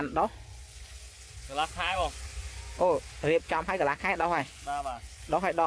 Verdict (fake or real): fake